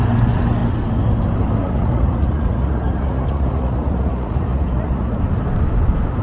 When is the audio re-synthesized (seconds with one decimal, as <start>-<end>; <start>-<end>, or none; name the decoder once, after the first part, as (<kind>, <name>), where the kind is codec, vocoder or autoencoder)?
1.6-5.2 (vocoder, Vocos)